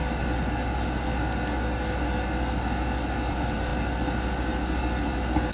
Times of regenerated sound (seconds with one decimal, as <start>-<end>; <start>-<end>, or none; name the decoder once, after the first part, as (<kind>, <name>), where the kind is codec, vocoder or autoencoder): 3.3-3.7 (vocoder, BigVGAN v2)

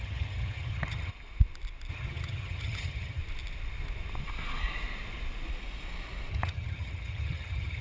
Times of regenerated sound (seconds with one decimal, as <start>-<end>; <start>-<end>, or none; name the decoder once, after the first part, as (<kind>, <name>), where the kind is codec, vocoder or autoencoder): 0.0-1.1 (vocoder, HiFi-GAN); 1.9-3.2; 6.3-7.8